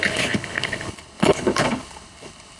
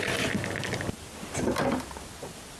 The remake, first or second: first